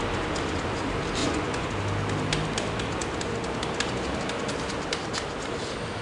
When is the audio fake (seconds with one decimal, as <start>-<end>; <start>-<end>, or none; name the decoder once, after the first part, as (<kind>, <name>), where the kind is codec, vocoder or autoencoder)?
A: 1.2-1.7 (vocoder, Vocos)